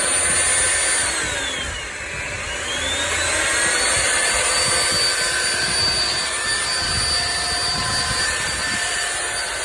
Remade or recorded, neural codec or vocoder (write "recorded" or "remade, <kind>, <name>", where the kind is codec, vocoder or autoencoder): recorded